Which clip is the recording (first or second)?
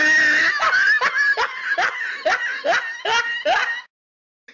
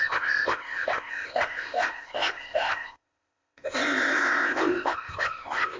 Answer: first